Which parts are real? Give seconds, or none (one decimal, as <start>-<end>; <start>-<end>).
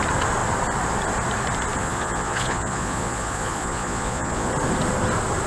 0.0-1.8; 4.5-5.5